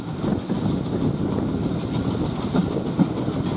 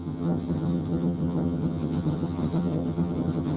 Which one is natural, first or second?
first